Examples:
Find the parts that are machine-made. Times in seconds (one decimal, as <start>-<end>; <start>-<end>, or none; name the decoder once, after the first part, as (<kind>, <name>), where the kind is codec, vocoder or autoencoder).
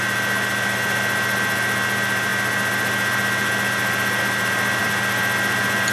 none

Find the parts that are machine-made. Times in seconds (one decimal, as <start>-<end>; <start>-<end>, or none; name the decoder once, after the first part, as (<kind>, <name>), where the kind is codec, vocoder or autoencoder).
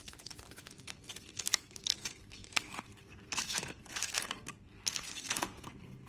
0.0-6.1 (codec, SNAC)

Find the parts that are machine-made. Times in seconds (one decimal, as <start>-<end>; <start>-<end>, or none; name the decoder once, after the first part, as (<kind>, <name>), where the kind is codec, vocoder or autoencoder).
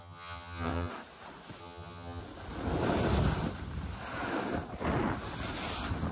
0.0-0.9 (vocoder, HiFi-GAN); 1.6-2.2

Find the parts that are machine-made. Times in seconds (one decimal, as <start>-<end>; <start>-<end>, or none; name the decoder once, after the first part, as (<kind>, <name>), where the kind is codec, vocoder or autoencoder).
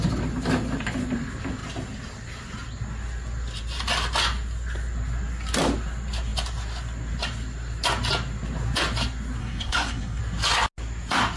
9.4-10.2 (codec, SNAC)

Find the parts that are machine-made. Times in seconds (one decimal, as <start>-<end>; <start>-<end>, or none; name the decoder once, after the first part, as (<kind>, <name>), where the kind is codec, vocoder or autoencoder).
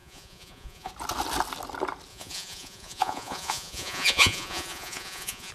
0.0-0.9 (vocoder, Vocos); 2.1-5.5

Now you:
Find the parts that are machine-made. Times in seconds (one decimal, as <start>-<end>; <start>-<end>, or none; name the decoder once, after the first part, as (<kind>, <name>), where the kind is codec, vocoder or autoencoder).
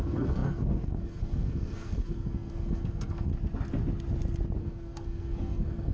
0.0-3.3 (codec, SNAC); 4.6-5.9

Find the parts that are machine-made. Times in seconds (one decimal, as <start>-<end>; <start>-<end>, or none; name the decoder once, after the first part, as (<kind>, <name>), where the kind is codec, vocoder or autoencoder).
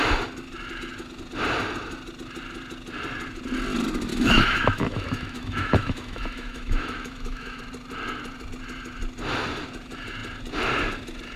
4.1-7.6 (autoencoder, DAC-VAE)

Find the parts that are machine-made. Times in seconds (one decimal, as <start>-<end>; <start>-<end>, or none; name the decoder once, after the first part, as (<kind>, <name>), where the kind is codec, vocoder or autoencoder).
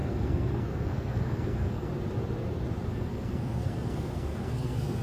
0.0-1.9 (codec, SNAC); 2.9-5.0